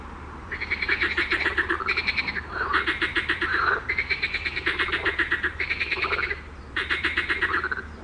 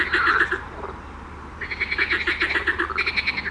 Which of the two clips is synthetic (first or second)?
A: first